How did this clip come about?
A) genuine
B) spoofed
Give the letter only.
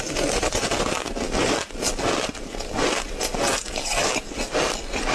A